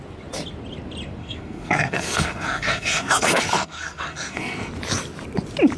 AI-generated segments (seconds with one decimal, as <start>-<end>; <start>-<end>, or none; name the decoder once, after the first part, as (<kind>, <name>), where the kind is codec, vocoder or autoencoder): 1.2-4.7 (codec, SNAC)